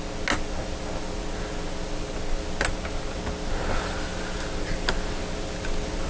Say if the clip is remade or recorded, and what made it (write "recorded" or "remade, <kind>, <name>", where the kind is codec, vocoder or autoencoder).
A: recorded